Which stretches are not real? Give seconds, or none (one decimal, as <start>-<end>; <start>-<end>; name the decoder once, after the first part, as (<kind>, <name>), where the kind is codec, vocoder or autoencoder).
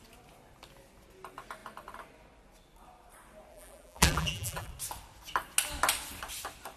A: 3.5-4.7 (vocoder, BigVGAN v2)